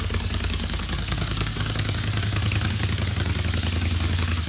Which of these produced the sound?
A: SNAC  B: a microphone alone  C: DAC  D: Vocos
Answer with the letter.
C